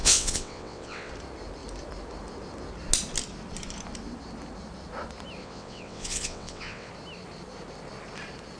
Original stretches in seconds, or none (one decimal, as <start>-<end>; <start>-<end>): 1.1-5.4; 6.9-8.6